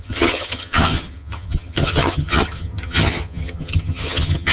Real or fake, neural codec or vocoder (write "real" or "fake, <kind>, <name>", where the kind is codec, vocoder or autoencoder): fake, vocoder, HiFi-GAN